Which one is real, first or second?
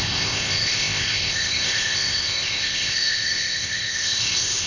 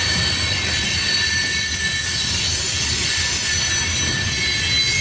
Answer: second